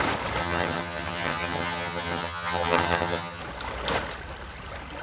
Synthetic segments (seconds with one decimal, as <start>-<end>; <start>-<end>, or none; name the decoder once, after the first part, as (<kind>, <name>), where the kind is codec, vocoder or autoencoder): 0.4-3.4 (vocoder, HiFi-GAN)